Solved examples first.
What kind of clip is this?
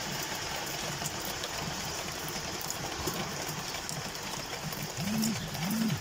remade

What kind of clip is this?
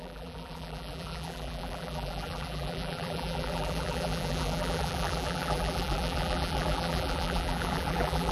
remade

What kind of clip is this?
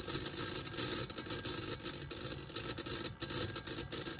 recorded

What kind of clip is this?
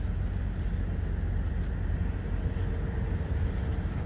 recorded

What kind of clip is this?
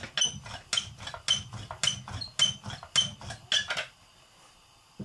recorded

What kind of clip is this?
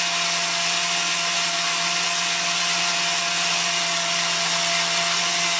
recorded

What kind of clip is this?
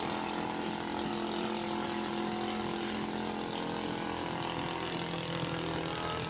recorded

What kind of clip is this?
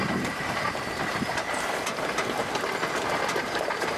remade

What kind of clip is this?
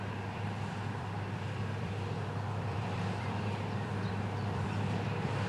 remade